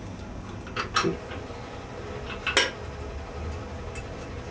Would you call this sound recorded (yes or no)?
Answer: yes